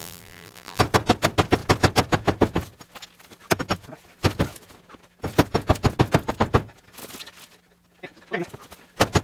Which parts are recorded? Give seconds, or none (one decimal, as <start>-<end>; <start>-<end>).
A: 0.8-9.2